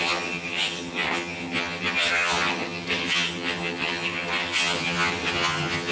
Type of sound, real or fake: fake